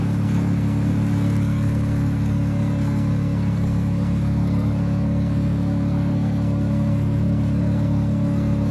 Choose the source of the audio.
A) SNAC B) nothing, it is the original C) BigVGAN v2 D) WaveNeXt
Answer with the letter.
A